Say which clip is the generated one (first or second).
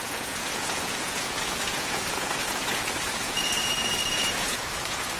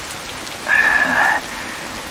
first